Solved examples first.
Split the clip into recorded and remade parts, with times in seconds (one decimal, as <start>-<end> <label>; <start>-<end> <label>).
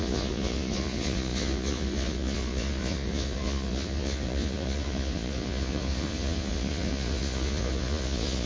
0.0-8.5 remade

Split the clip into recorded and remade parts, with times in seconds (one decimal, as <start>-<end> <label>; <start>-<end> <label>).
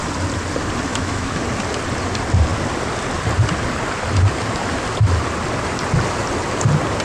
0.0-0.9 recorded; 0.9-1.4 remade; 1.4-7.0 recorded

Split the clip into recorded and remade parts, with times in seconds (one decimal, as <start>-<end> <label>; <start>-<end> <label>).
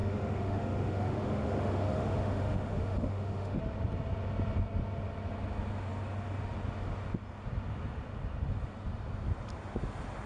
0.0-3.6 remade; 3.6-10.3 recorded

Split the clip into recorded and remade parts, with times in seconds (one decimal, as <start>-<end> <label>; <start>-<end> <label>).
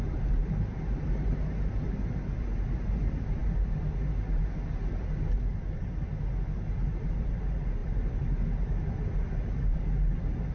0.0-10.5 recorded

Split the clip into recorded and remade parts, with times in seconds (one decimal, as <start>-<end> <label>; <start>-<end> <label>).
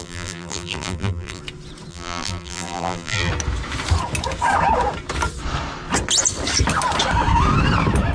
0.0-1.4 remade; 1.4-1.9 recorded; 1.9-3.3 remade; 3.3-8.1 recorded